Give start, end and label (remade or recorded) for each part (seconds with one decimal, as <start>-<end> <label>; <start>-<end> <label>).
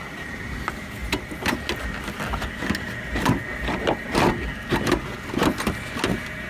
0.0-6.5 recorded